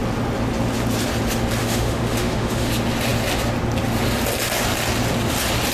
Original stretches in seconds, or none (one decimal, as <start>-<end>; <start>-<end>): 0.0-1.6; 2.7-5.7